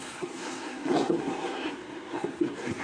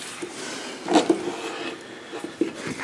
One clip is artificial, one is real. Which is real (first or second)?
second